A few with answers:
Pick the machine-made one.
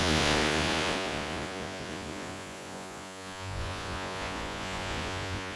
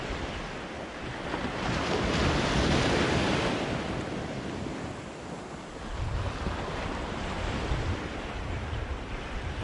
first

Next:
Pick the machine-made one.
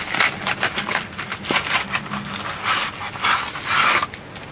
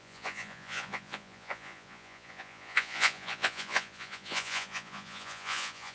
second